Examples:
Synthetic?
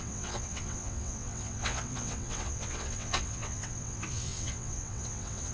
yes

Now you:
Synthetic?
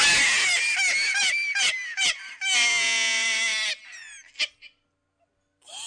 no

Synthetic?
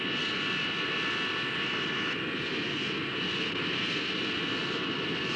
no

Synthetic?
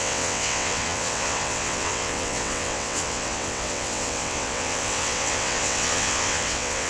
yes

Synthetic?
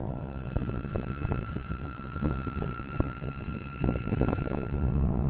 yes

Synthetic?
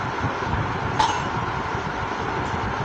no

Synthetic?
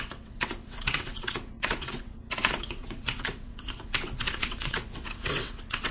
yes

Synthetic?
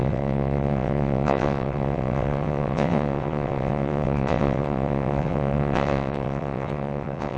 yes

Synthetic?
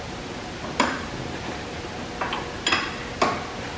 no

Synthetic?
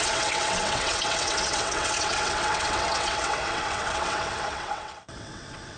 yes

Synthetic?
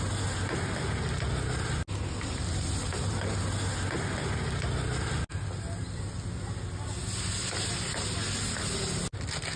no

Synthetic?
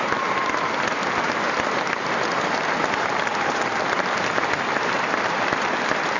no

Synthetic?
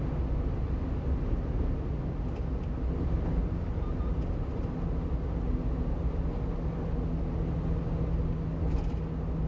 no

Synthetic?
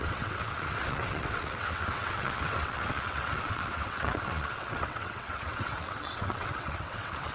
yes